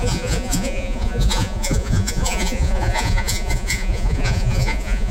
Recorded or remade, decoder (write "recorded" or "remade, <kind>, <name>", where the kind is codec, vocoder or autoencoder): remade, vocoder, Vocos